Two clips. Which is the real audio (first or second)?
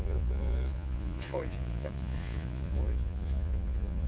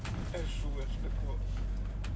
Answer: second